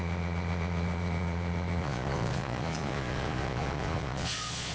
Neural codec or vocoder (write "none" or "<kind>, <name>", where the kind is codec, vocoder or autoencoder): vocoder, Vocos